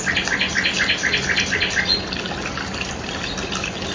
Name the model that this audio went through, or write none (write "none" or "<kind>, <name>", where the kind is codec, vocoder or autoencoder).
none